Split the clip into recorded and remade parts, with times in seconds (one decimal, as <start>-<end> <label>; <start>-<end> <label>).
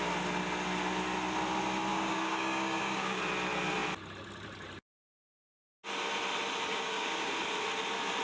0.0-1.9 recorded; 1.9-3.2 remade; 3.2-6.7 recorded; 6.7-7.3 remade; 7.3-8.2 recorded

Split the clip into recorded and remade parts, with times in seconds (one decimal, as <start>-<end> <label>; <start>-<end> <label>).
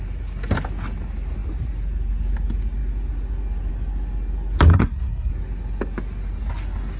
0.0-4.7 recorded; 4.7-5.3 remade; 5.3-7.0 recorded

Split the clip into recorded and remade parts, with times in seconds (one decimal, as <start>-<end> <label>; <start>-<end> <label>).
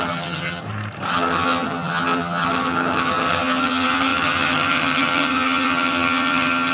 0.0-0.6 remade; 0.6-1.1 recorded; 1.1-6.7 remade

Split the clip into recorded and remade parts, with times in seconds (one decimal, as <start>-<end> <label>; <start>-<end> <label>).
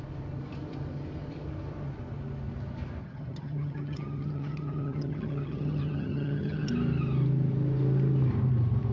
0.0-3.0 recorded; 3.0-6.7 remade; 6.7-8.9 recorded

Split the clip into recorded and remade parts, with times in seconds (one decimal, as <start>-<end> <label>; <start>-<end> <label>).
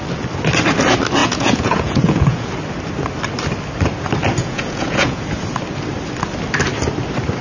0.0-1.2 recorded; 1.2-2.5 remade; 2.5-4.4 recorded; 4.4-5.2 remade; 5.2-7.4 recorded